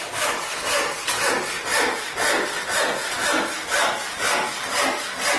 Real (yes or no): yes